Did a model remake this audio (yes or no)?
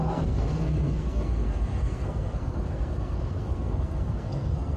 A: yes